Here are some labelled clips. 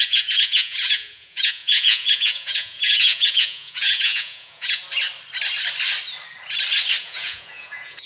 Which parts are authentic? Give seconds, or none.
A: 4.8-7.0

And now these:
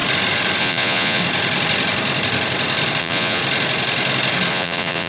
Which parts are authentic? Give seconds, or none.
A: 0.0-0.6; 1.2-3.0; 3.4-4.5